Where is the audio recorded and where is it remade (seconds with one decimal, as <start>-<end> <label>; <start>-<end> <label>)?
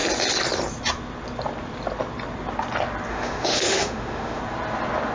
0.0-3.1 recorded; 3.1-4.4 remade; 4.4-5.1 recorded